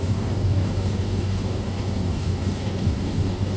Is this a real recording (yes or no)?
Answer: no